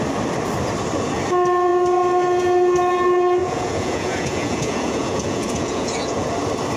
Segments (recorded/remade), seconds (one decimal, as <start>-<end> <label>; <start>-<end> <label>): 0.0-3.4 recorded; 3.4-6.3 remade; 6.3-6.8 recorded